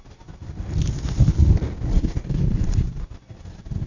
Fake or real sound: real